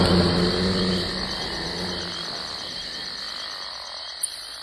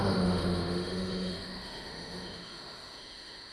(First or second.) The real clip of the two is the first